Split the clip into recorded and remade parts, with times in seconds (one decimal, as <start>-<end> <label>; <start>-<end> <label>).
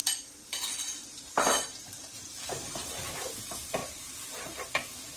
0.0-3.1 remade; 3.1-3.8 recorded; 3.8-4.7 remade; 4.7-5.2 recorded